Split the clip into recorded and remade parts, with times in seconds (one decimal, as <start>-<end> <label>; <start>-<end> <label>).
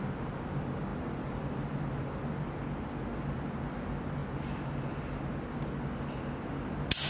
0.0-7.1 recorded